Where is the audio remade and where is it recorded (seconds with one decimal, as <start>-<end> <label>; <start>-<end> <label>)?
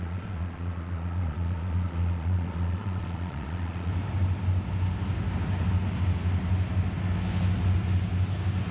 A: 0.0-3.9 remade; 3.9-8.7 recorded